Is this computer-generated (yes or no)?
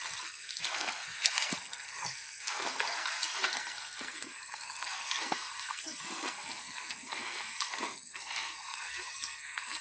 yes